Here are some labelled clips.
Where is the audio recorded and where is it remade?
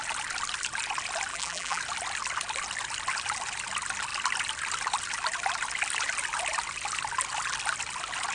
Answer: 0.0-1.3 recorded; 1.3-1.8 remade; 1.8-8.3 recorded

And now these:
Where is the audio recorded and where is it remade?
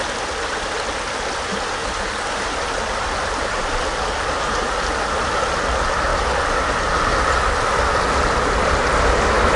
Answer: 0.0-1.8 recorded; 1.8-3.6 remade; 3.6-9.6 recorded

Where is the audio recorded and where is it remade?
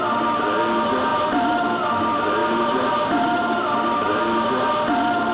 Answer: 0.0-1.1 recorded; 1.1-1.7 remade; 1.7-2.4 recorded; 2.4-4.2 remade; 4.2-5.3 recorded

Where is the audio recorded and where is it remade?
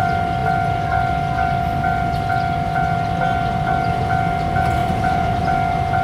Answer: 0.0-4.8 recorded; 4.8-5.4 remade; 5.4-6.0 recorded